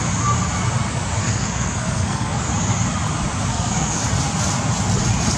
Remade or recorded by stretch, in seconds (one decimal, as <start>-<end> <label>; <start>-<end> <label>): 0.0-1.2 recorded; 1.2-2.4 remade; 2.4-3.5 recorded; 3.5-4.0 remade; 4.0-5.4 recorded